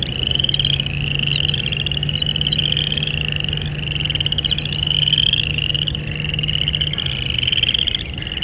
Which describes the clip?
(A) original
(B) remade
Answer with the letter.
A